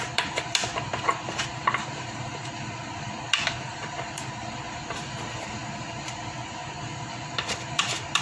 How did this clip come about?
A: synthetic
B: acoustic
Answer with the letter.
A